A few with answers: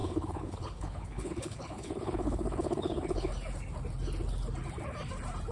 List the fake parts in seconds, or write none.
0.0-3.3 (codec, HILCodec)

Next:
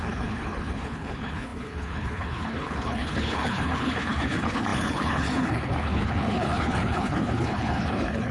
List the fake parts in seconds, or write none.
0.0-8.3 (codec, HILCodec)